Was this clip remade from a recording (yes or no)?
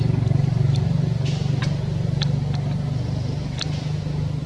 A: no